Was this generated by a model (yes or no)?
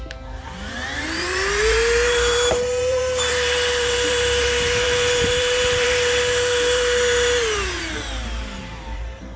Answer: yes